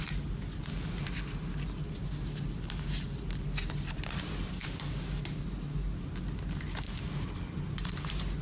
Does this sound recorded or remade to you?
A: recorded